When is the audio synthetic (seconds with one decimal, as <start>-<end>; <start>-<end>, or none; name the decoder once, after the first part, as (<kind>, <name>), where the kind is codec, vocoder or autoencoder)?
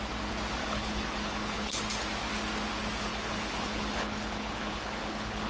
0.6-1.8 (codec, HILCodec); 3.1-5.5